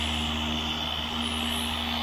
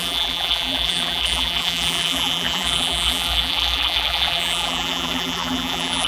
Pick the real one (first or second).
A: first